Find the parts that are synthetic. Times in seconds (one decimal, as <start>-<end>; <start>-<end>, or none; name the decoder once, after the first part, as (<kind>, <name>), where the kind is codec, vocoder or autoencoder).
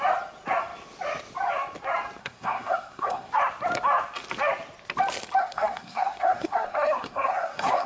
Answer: 2.2-3.3 (codec, SNAC); 5.4-7.9